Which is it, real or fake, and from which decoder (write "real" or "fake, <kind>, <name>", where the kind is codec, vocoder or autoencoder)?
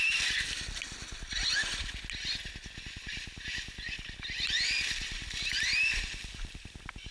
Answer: real